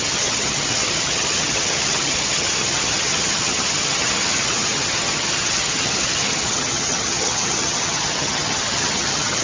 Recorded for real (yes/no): no